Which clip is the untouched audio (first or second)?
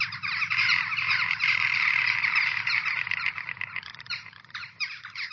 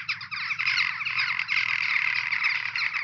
second